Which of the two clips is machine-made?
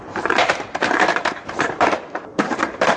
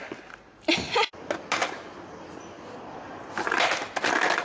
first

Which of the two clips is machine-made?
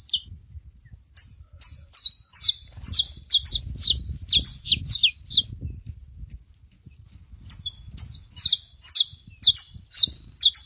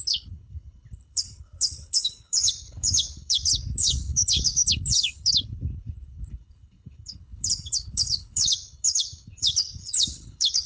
second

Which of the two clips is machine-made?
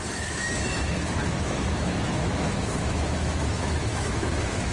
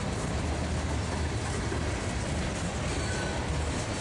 first